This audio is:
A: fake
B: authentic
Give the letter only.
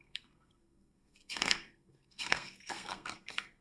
A